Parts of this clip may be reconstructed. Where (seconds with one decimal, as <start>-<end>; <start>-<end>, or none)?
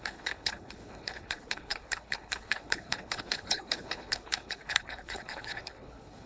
0.0-6.3